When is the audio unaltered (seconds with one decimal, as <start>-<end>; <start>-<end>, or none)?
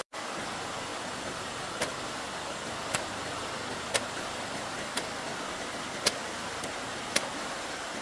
none